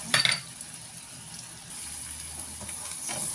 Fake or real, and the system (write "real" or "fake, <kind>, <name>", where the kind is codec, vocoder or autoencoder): real